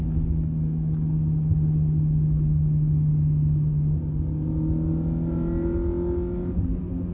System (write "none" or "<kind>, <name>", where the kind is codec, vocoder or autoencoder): none